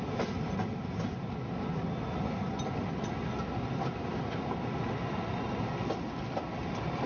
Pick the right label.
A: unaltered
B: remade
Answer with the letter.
A